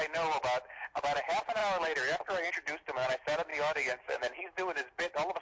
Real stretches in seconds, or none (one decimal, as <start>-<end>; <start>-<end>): 0.0-3.5; 4.2-5.4